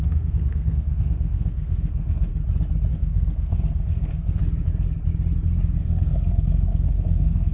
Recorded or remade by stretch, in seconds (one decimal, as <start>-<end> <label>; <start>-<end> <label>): 0.0-2.3 remade; 2.3-2.9 recorded; 2.9-4.4 remade; 4.4-5.8 recorded; 5.8-7.5 remade